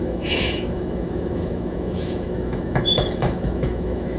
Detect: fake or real fake